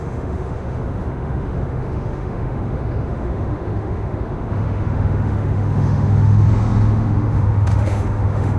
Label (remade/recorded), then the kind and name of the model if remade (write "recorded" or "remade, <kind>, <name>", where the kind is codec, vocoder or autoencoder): remade, autoencoder, DAC-VAE